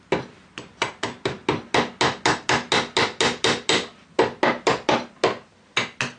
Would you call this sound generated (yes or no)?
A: no